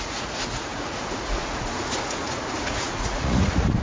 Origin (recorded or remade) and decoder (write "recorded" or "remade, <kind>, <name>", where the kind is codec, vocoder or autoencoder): remade, vocoder, Vocos